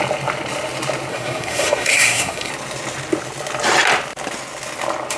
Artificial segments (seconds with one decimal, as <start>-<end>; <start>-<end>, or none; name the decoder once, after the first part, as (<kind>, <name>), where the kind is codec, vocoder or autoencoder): 1.1-2.5 (codec, SNAC)